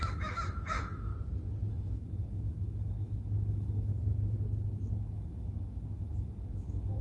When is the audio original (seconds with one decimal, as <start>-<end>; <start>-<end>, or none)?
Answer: 1.1-1.7; 3.9-5.0